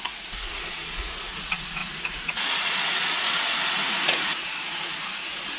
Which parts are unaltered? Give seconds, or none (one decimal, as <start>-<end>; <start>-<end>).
none